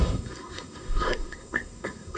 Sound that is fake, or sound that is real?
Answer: fake